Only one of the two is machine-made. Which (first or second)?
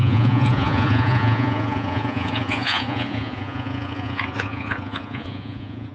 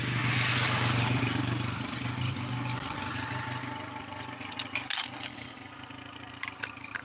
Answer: first